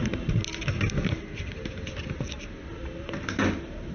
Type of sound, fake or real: real